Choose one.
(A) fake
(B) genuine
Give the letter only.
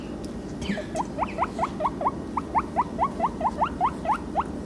B